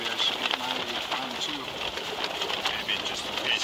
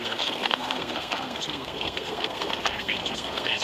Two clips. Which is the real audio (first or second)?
first